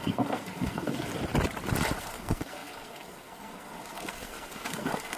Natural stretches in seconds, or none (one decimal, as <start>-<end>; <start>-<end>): 1.1-2.0